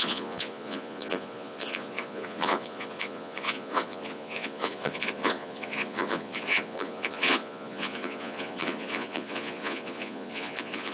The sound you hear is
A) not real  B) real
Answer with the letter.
A